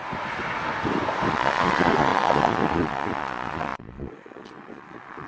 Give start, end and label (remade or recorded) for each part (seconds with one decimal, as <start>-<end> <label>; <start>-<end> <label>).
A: 0.0-1.3 recorded; 1.3-5.3 remade

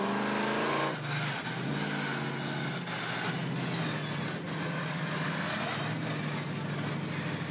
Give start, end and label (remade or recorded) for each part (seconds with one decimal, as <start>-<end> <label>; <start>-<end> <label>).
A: 0.0-7.5 recorded

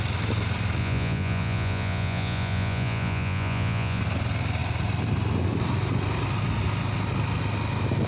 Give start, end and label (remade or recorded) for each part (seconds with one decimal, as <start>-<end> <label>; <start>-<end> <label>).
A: 0.0-0.8 recorded; 0.8-4.0 remade; 4.0-8.1 recorded

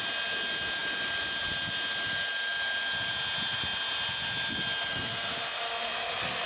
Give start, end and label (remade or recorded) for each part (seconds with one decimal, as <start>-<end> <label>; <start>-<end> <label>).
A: 0.0-6.5 recorded

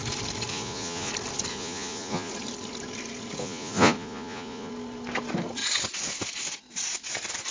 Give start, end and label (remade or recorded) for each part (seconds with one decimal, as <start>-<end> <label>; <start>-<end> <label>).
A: 0.0-0.5 recorded; 0.5-1.1 remade; 1.1-1.5 recorded; 1.5-2.3 remade; 2.3-3.4 recorded; 3.4-4.7 remade; 4.7-7.5 recorded

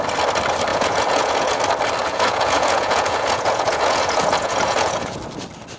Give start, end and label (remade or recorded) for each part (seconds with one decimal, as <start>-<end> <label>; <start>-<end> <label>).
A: 0.0-0.7 recorded; 0.7-1.6 remade; 1.6-2.0 recorded; 2.0-5.2 remade; 5.2-5.8 recorded

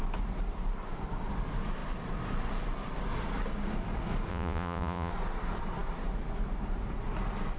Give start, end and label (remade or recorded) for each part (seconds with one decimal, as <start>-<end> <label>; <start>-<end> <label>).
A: 0.0-4.3 recorded; 4.3-5.1 remade; 5.1-7.6 recorded

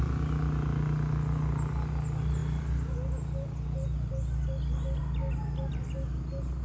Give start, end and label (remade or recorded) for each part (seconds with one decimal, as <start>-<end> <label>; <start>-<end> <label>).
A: 0.0-6.6 recorded